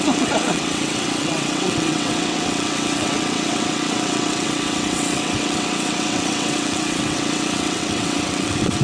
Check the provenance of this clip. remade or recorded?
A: remade